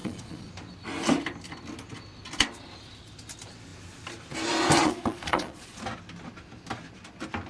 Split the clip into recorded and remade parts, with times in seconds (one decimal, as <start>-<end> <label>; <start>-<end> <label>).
0.0-0.5 remade; 0.5-4.8 recorded; 4.8-5.8 remade; 5.8-7.5 recorded